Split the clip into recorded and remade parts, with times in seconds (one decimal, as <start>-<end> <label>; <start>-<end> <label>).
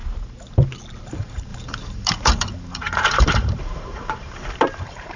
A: 0.0-1.0 recorded; 1.0-5.2 remade